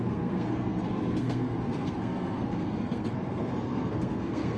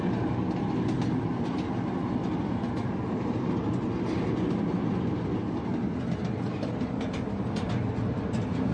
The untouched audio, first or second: second